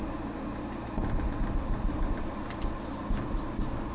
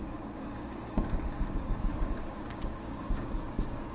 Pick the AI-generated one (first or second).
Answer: second